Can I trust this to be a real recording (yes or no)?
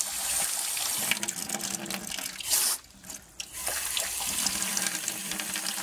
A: yes